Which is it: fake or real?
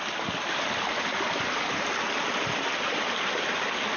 real